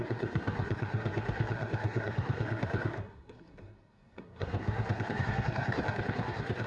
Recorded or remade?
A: remade